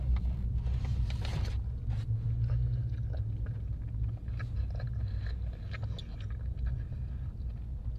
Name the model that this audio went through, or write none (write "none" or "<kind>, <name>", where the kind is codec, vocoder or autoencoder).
none